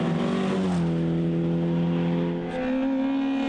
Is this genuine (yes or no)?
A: yes